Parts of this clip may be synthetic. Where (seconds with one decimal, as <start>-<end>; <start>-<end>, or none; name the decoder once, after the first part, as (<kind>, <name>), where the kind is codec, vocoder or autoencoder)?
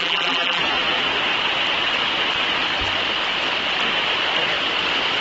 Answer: 0.0-0.6 (vocoder, BigVGAN v2)